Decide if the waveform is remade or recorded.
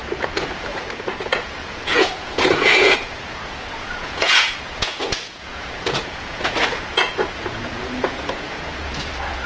remade